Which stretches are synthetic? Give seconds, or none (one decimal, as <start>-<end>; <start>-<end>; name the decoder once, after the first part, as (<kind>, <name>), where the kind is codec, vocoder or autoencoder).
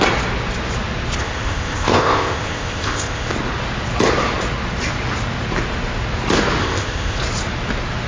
1.2-3.3 (codec, ZipCodec); 6.6-7.2